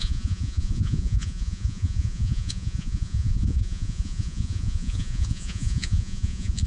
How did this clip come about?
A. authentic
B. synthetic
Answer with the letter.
B